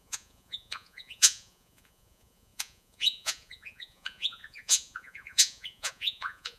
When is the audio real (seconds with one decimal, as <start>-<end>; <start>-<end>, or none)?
none